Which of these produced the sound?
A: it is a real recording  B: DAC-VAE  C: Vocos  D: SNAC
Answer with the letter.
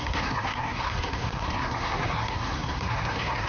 D